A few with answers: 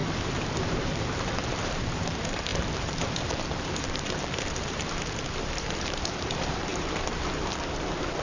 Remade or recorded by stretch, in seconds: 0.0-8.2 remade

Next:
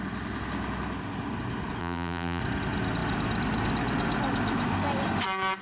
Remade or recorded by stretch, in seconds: 0.0-1.8 recorded; 1.8-2.4 remade; 2.4-5.6 recorded

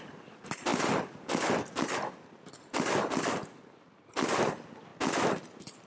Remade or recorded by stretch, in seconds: 0.0-0.7 remade; 0.7-3.9 recorded; 3.9-4.9 remade; 4.9-5.9 recorded

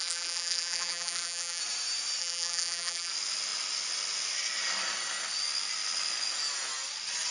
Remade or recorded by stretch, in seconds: 0.0-1.6 remade; 1.6-2.2 recorded; 2.2-3.1 remade; 3.1-7.3 recorded

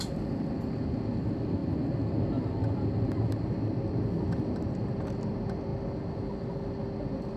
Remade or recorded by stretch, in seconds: 0.0-7.4 recorded

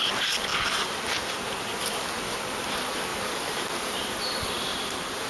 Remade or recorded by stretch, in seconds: 0.0-3.1 recorded; 3.1-4.1 remade; 4.1-5.3 recorded